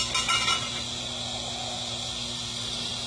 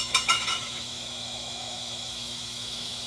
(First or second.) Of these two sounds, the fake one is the second